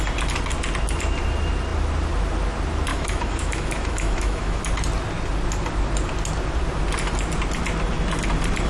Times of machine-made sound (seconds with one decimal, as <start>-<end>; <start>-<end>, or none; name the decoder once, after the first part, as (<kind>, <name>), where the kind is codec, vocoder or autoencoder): 2.9-4.6 (autoencoder, DAC-VAE)